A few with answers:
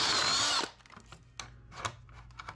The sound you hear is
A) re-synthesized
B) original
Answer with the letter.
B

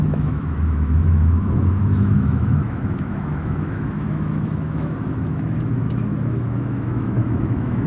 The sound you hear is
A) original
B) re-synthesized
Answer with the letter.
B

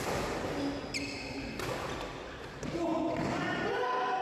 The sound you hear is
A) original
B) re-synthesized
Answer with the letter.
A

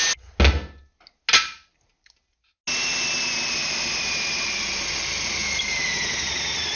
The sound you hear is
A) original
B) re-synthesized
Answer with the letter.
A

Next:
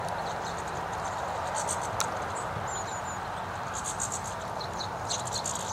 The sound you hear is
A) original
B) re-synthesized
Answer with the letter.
A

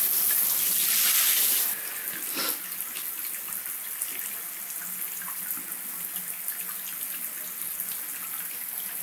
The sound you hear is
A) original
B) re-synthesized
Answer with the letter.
A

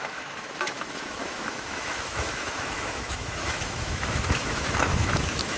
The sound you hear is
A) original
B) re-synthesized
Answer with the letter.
B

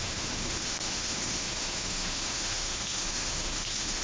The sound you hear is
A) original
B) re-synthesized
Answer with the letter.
B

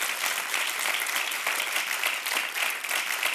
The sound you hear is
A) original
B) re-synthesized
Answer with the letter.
A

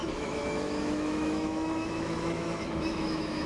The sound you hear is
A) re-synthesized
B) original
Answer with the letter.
A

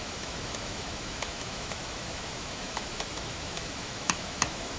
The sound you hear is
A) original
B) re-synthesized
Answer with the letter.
B